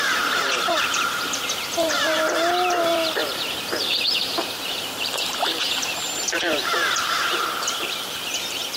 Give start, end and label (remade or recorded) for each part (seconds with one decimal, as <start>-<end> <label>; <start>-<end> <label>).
0.0-2.5 remade; 2.5-3.2 recorded; 3.2-7.4 remade; 7.4-8.8 recorded